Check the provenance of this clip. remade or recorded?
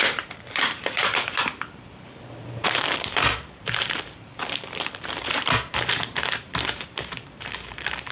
remade